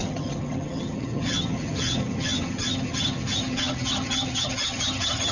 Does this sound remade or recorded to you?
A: remade